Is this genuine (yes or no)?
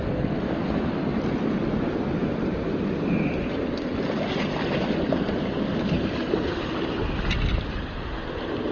yes